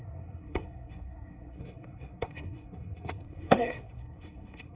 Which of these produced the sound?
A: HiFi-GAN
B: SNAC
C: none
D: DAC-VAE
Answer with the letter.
B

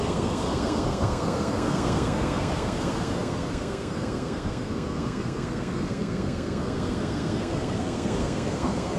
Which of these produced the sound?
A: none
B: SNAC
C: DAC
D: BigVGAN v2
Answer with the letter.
B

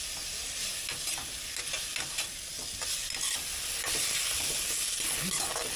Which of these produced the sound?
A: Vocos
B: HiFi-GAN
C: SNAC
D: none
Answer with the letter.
D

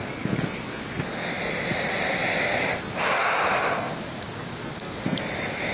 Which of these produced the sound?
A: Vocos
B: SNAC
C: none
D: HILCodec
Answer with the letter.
C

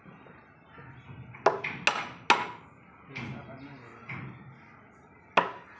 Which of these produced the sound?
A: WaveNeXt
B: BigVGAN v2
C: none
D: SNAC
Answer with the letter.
C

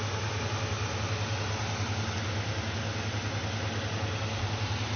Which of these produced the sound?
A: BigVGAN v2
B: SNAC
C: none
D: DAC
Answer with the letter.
C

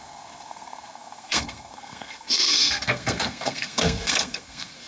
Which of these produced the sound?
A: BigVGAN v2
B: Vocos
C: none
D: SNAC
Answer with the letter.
D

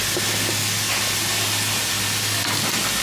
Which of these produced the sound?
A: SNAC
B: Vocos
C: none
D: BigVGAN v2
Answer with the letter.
C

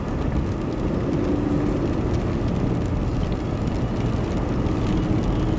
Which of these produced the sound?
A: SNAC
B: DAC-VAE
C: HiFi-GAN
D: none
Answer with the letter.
D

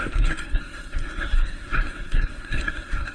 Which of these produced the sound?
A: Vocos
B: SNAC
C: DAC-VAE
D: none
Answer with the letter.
B